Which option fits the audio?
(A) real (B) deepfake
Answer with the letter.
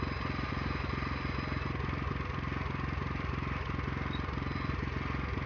A